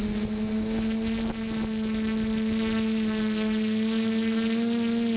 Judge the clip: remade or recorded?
recorded